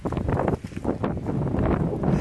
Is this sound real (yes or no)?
yes